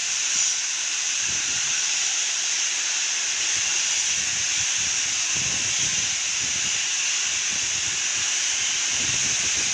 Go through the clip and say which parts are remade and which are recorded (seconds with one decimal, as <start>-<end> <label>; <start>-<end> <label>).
0.0-5.0 remade; 5.0-5.9 recorded; 5.9-6.4 remade; 6.4-8.1 recorded; 8.1-9.0 remade; 9.0-9.7 recorded